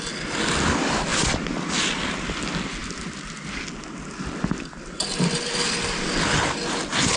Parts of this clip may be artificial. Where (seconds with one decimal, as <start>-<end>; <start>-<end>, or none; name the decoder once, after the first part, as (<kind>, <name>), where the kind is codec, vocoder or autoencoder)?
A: none